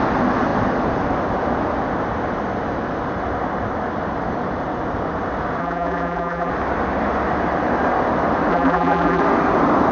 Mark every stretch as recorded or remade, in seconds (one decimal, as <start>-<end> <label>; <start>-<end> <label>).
0.0-5.6 recorded; 5.6-6.5 remade; 6.5-8.5 recorded; 8.5-9.2 remade; 9.2-9.9 recorded